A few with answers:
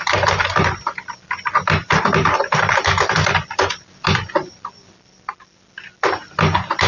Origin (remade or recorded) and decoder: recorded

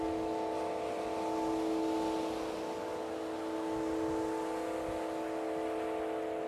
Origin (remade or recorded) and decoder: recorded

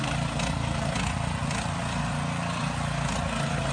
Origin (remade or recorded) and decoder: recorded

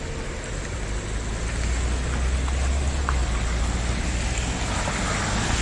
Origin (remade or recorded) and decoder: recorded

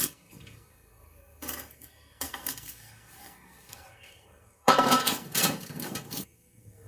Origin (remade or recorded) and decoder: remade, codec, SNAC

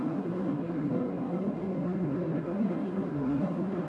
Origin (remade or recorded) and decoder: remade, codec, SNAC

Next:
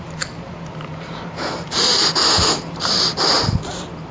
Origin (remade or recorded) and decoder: remade, vocoder, BigVGAN v2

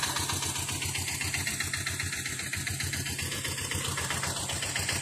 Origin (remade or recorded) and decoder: recorded